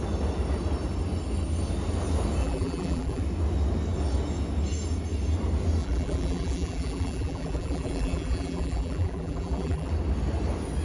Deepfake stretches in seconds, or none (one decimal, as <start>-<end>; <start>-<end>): 2.4-3.2; 5.8-9.9